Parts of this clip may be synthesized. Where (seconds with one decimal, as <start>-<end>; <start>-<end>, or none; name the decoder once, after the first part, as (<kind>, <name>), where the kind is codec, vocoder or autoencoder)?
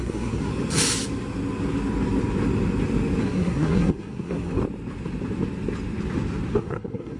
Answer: 0.0-0.5 (codec, SNAC); 3.2-4.6; 6.5-7.2